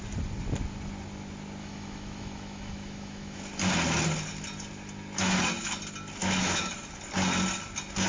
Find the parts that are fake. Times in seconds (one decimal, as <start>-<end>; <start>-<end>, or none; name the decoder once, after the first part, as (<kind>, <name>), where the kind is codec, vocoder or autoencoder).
1.6-3.4 (autoencoder, DAC-VAE); 6.2-6.7